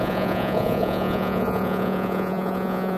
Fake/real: fake